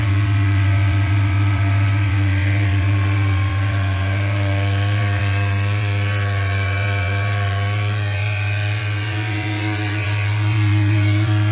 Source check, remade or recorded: remade